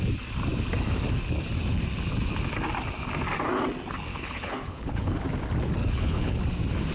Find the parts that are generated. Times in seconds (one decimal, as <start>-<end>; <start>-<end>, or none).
4.1-5.2; 5.8-6.4